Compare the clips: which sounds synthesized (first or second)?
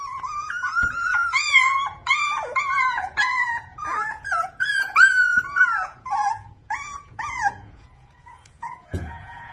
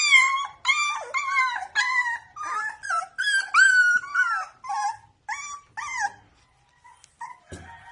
first